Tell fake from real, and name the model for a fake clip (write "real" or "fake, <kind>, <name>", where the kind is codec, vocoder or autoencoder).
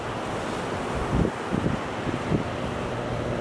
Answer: real